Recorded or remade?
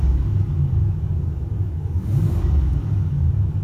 remade